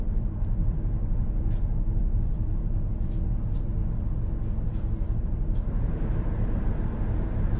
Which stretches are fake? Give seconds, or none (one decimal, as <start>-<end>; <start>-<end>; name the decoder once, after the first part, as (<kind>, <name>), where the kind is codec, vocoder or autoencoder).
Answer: 0.0-3.8 (vocoder, BigVGAN v2); 5.2-7.6